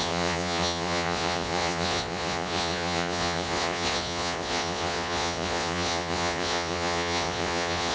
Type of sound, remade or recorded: remade